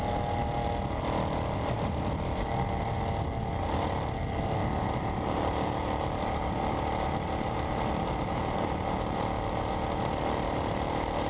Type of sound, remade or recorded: recorded